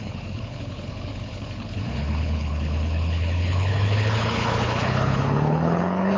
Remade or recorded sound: remade